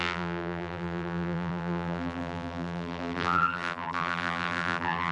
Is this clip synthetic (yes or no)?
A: yes